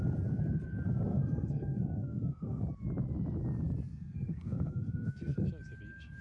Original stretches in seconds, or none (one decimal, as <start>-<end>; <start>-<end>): 0.0-1.1; 2.6-3.9; 5.5-6.2